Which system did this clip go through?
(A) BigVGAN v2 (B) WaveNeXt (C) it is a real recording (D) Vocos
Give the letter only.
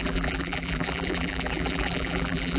A